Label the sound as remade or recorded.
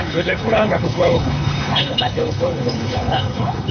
remade